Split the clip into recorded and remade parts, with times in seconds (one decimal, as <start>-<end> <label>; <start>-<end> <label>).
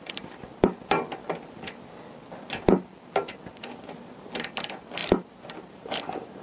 0.0-0.5 remade; 0.5-3.6 recorded; 3.6-6.4 remade